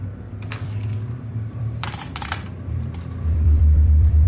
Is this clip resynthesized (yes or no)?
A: yes